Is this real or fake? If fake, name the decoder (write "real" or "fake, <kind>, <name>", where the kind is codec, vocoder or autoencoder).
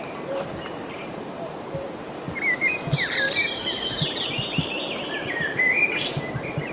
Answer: fake, vocoder, BigVGAN v2